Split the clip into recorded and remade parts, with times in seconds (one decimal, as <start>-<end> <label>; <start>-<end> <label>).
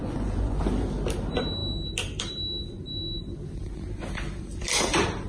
0.0-0.6 remade; 0.6-5.3 recorded